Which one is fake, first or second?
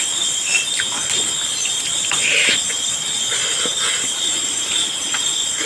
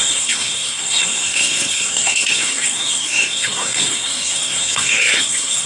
second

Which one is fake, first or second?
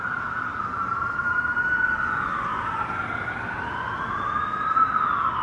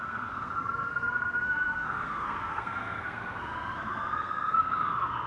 second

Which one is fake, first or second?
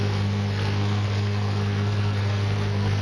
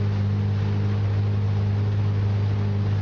first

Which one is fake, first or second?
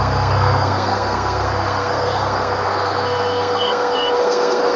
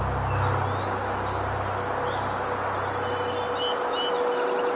first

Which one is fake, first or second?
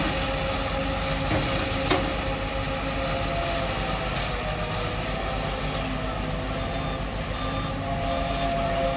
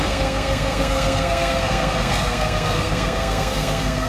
second